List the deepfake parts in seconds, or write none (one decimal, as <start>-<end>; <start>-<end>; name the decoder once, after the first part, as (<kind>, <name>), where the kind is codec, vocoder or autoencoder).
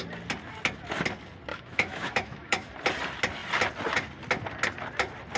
1.5-2.7 (autoencoder, DAC-VAE)